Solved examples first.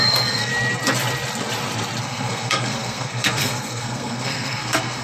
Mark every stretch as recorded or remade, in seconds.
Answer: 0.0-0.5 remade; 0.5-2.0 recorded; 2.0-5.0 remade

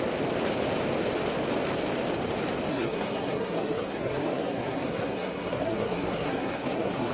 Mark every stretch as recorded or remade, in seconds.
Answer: 0.0-2.7 recorded; 2.7-7.1 remade

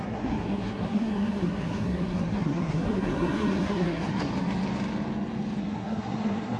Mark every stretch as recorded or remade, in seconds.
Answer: 0.0-4.3 remade; 4.3-5.6 recorded; 5.6-6.6 remade

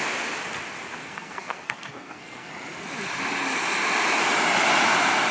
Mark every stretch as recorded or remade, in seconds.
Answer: 0.0-1.0 recorded; 1.0-2.5 remade; 2.5-5.3 recorded

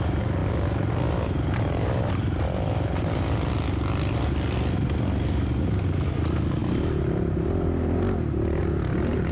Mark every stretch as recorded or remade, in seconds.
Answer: 0.0-9.3 recorded

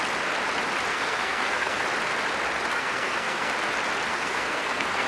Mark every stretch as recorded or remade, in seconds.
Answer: 0.0-0.9 recorded; 0.9-1.8 remade; 1.8-2.7 recorded; 2.7-3.5 remade; 3.5-4.1 recorded; 4.1-5.1 remade

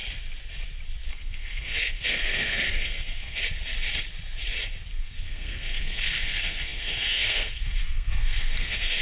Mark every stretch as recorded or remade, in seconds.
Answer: 0.0-1.1 recorded; 1.1-3.4 remade; 3.4-5.0 recorded; 5.0-9.0 remade

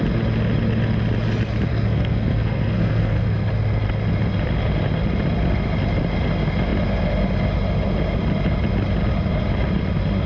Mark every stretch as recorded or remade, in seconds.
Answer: 0.0-1.7 recorded; 1.7-3.5 remade; 3.5-10.3 recorded